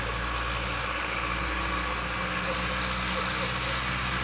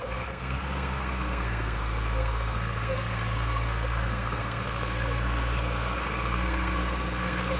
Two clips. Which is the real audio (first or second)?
first